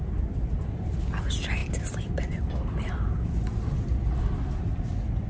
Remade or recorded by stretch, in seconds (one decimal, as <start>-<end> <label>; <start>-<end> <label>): 0.0-5.3 recorded